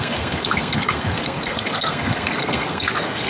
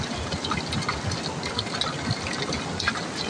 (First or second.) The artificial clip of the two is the first